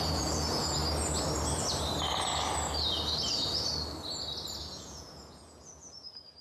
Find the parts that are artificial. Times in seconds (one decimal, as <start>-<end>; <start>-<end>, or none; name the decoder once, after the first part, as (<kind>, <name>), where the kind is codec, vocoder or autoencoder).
0.0-0.8 (vocoder, Vocos); 4.6-6.4